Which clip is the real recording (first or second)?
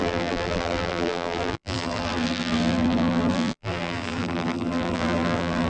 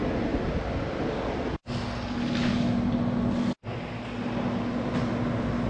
second